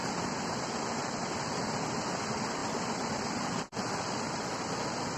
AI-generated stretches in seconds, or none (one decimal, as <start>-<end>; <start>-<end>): none